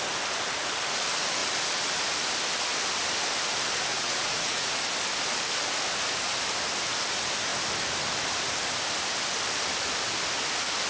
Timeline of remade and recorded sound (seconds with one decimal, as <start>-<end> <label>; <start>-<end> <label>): 0.0-3.9 recorded; 3.9-4.8 remade; 4.8-10.9 recorded